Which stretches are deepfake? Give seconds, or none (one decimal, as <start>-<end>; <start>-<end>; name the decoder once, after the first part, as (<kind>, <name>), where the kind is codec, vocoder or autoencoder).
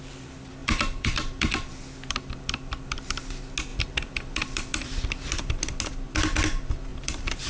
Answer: 0.6-1.7 (vocoder, BigVGAN v2); 3.7-5.8; 6.9-7.5